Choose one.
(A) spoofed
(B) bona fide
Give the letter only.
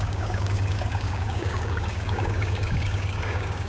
A